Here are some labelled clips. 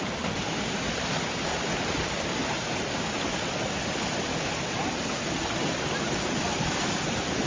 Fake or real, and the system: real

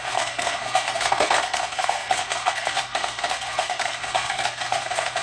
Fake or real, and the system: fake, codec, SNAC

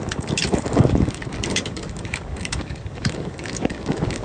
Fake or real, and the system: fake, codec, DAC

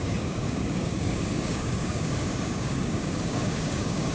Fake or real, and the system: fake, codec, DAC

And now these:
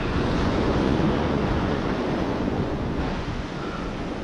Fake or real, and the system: fake, vocoder, Vocos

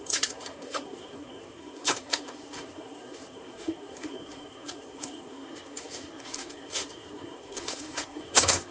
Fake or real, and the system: fake, codec, SNAC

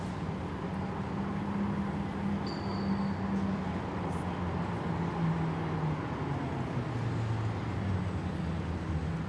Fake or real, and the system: real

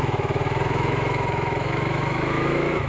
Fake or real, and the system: fake, autoencoder, DAC-VAE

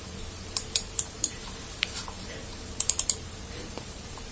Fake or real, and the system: fake, vocoder, BigVGAN v2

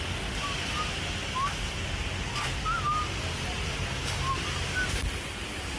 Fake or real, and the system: real